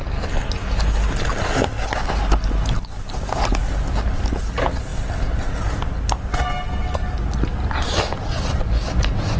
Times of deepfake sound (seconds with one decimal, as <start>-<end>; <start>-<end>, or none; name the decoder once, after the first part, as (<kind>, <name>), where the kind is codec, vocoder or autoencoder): none